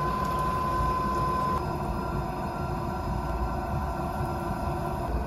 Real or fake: real